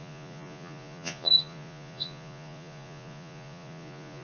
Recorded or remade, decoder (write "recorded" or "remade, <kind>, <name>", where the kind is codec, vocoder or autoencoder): remade, vocoder, Vocos